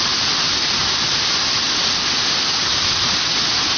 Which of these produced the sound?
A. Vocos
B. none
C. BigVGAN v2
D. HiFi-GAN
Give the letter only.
B